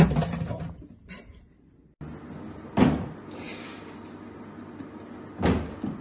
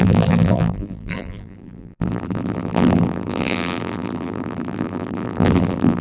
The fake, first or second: second